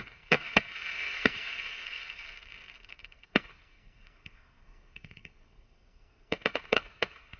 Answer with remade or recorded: remade